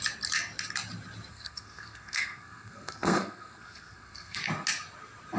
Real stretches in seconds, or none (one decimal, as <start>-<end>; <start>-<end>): 0.0-1.3; 4.4-5.4